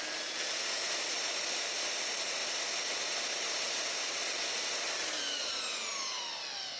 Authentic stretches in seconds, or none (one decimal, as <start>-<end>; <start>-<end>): 0.0-6.8